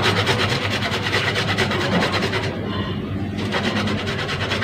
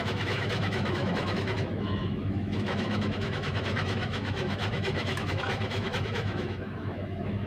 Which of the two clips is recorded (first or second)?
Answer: first